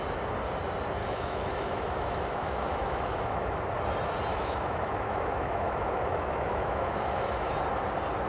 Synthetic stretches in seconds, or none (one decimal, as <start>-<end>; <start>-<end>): 1.0-3.5; 4.3-7.5